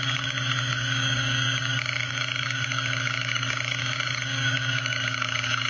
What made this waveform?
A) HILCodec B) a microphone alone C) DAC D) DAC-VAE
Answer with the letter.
C